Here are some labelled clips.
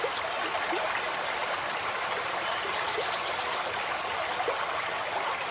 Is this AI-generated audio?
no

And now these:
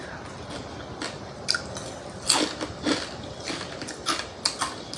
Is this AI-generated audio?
no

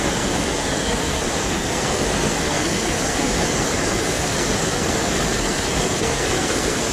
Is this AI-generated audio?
yes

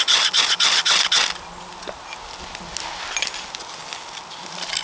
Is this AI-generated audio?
no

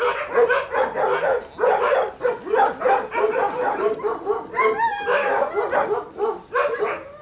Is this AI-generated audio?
no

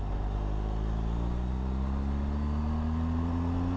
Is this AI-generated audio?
no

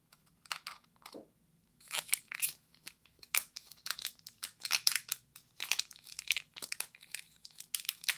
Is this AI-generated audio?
yes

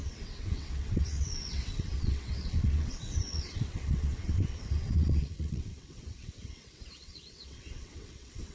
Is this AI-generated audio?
yes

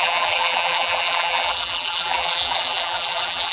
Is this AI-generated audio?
yes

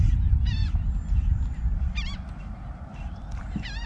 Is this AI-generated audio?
no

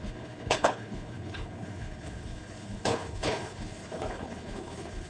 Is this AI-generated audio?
yes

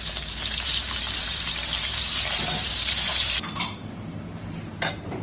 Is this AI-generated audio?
yes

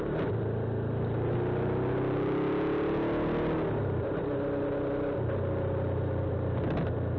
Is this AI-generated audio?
no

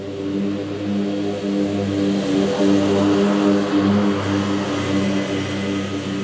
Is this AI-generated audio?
no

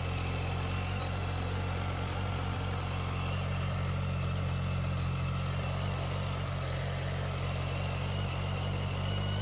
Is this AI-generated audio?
no